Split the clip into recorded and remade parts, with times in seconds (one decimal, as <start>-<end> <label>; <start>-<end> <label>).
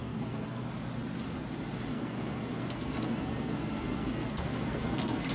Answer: 0.0-0.6 remade; 0.6-1.9 recorded; 1.9-5.3 remade